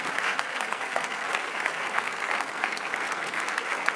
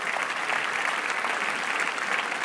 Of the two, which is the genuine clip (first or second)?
second